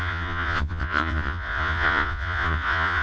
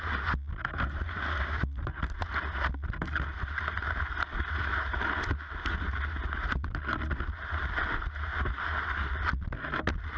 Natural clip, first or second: second